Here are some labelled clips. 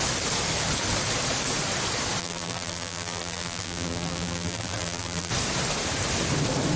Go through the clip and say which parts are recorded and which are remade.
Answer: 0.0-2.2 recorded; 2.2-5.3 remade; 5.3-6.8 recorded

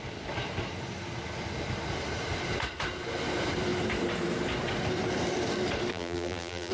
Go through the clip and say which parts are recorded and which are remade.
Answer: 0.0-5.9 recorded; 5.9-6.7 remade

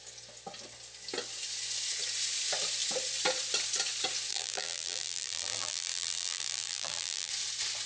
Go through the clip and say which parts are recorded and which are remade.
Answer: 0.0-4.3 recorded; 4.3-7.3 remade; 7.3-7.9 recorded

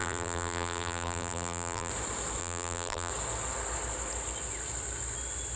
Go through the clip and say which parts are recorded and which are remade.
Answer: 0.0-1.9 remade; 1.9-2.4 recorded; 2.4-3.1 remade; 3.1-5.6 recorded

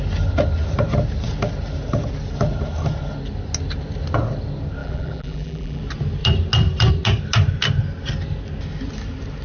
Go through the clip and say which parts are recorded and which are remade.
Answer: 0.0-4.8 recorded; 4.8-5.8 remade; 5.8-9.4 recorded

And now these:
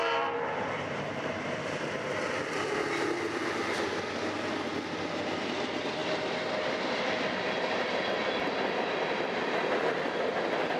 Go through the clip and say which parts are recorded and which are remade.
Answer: 0.0-4.1 remade; 4.1-6.0 recorded; 6.0-10.3 remade; 10.3-10.8 recorded

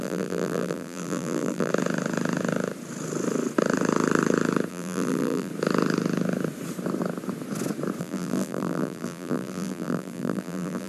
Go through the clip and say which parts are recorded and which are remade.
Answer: 0.0-1.7 remade; 1.7-4.7 recorded; 4.7-5.5 remade; 5.5-8.0 recorded; 8.0-10.9 remade

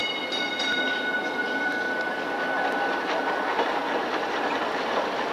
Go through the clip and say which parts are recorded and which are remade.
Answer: 0.0-5.3 recorded